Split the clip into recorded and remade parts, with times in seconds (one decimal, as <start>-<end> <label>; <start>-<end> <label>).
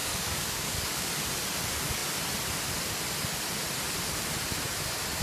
0.0-1.1 remade; 1.1-5.2 recorded